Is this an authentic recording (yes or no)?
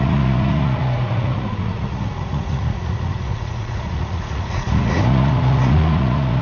no